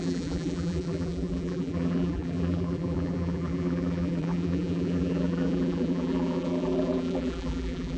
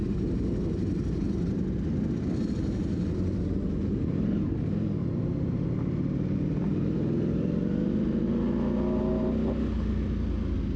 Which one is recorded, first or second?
second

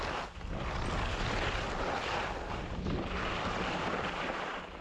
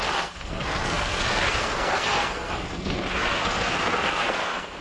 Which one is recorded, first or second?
first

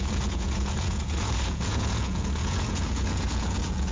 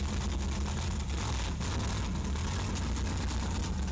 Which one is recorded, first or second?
second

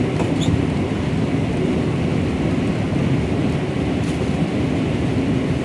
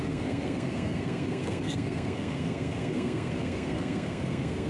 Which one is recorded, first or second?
first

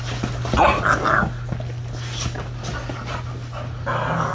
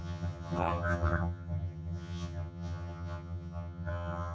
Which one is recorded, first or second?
first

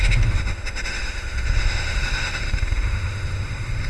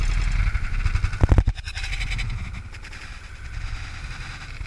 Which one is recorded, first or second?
second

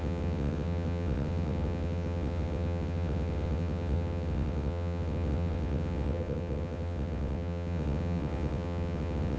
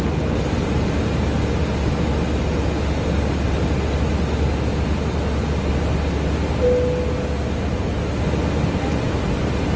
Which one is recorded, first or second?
second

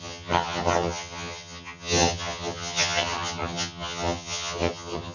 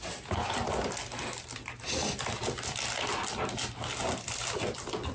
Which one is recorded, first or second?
second